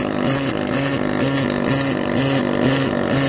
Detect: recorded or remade recorded